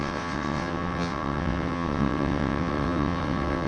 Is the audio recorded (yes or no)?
no